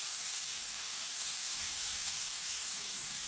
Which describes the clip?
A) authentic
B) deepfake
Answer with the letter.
B